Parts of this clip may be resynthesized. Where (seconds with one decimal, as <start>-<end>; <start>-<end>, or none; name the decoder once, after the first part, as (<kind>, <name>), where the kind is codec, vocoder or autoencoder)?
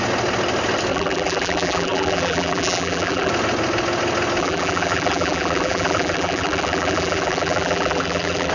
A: 0.9-3.3 (vocoder, BigVGAN v2); 4.4-8.5